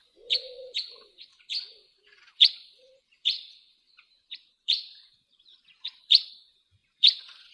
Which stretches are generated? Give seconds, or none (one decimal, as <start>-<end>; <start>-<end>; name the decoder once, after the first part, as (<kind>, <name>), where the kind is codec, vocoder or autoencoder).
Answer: 0.0-7.5 (vocoder, Vocos)